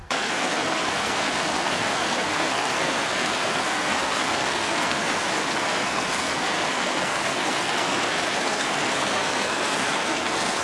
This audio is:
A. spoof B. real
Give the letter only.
A